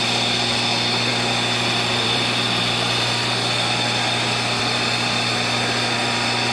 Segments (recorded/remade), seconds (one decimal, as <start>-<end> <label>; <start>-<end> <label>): 0.0-1.1 remade; 1.1-1.9 recorded; 1.9-6.5 remade